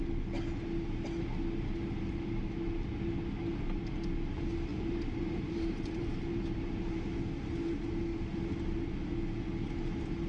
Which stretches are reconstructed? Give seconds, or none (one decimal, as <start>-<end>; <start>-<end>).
4.7-7.0